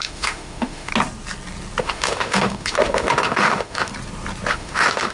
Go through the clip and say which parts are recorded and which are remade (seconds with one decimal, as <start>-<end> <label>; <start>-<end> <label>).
0.0-0.9 remade; 0.9-1.8 recorded; 1.8-3.9 remade; 3.9-4.5 recorded; 4.5-5.1 remade